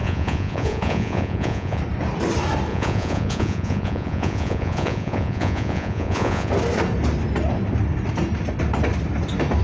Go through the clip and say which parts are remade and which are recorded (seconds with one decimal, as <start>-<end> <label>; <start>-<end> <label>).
0.0-1.8 remade; 1.8-2.7 recorded; 2.7-6.5 remade; 6.5-9.6 recorded